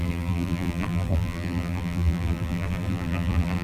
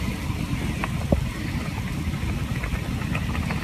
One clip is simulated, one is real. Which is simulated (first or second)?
first